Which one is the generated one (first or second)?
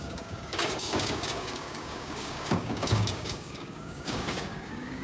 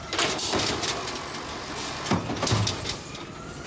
first